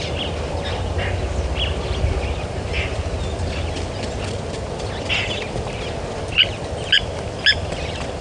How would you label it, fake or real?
real